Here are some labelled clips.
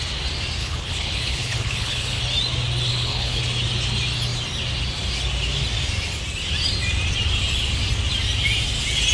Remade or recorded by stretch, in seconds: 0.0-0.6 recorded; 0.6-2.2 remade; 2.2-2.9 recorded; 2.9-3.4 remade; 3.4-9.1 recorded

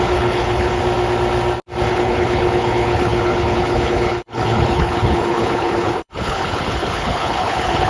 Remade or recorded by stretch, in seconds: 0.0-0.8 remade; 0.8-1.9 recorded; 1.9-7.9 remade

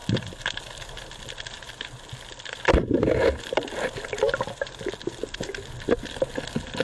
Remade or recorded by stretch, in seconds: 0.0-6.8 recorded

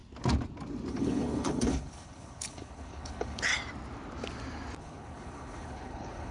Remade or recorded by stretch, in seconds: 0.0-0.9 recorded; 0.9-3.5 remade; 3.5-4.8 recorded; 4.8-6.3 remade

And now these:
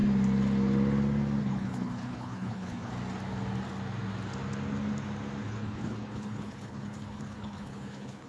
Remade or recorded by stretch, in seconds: 0.0-1.4 recorded; 1.4-2.9 remade; 2.9-5.4 recorded; 5.4-8.3 remade